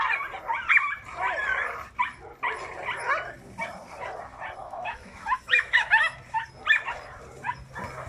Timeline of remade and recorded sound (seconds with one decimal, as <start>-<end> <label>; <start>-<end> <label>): 0.0-4.6 recorded; 4.6-6.2 remade; 6.2-8.1 recorded